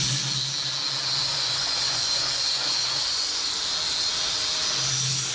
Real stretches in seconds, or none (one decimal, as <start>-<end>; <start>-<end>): 0.0-1.2; 3.5-5.3

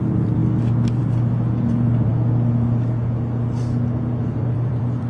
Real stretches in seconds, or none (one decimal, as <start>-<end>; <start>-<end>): 0.4-1.0; 2.1-4.2